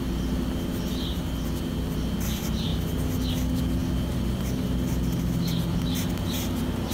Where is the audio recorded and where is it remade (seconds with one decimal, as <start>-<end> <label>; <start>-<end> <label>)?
0.0-6.9 recorded